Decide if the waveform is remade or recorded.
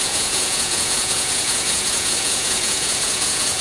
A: remade